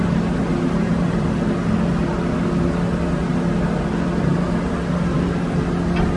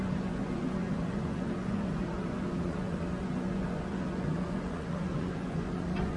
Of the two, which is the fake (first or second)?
second